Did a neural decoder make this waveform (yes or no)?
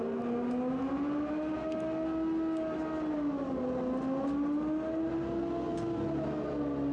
no